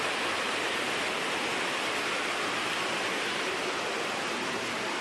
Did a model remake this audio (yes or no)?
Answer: no